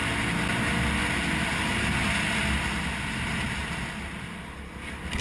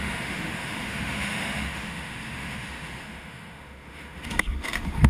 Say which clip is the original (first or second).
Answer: first